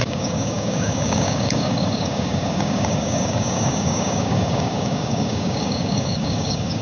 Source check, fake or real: fake